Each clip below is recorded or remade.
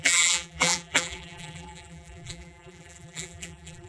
remade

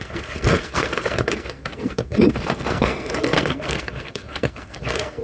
remade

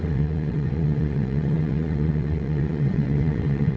remade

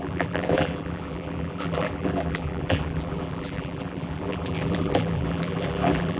remade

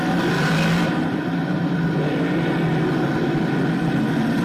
recorded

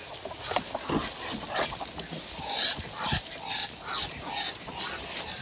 recorded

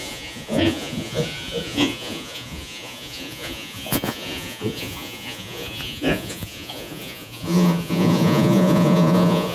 remade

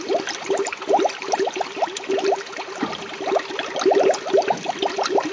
recorded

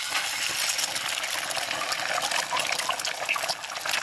recorded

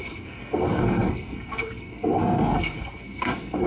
remade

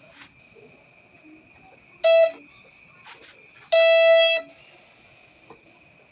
recorded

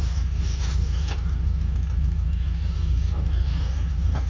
remade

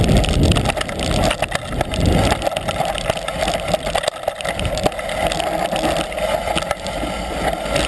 recorded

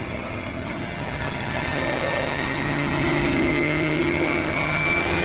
remade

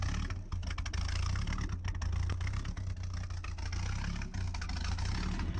recorded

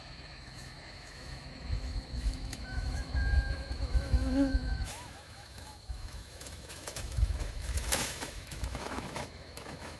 remade